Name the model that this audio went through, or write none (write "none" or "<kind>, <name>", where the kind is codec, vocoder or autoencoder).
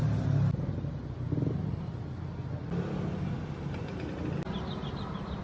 none